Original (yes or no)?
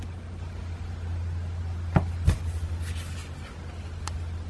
yes